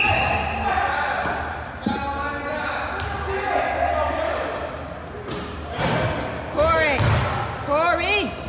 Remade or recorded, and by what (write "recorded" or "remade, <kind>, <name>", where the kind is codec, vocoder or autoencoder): recorded